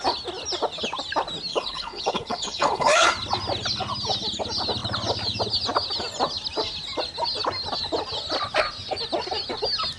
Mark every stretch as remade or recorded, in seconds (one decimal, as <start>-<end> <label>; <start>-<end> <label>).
0.0-1.5 recorded; 1.5-3.1 remade; 3.1-10.0 recorded

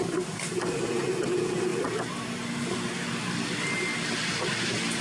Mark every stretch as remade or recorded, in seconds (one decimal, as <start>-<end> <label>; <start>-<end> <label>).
0.0-5.0 recorded

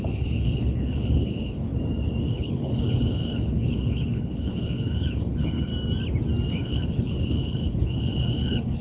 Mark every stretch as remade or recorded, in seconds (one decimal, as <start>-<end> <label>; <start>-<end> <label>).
0.0-1.7 remade; 1.7-2.2 recorded; 2.2-5.7 remade; 5.7-6.5 recorded; 6.5-8.8 remade

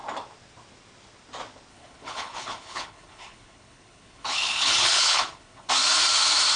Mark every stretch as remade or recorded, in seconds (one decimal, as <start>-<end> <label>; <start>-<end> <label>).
0.0-1.7 recorded; 1.7-5.7 remade; 5.7-6.6 recorded

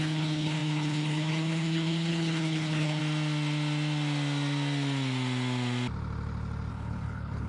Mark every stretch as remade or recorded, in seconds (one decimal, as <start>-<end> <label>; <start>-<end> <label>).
0.0-3.0 remade; 3.0-6.7 recorded; 6.7-7.5 remade

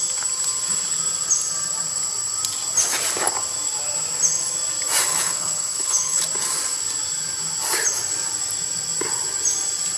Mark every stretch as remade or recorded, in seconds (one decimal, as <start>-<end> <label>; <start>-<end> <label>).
0.0-5.1 recorded; 5.1-6.2 remade; 6.2-10.0 recorded

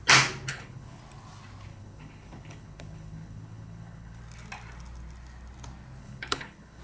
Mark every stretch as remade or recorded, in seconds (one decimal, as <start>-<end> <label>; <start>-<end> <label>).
0.0-0.5 recorded; 0.5-1.0 remade; 1.0-1.7 recorded; 1.7-4.2 remade; 4.2-6.0 recorded; 6.0-6.8 remade